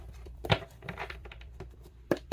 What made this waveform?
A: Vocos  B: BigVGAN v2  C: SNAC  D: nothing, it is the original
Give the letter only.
B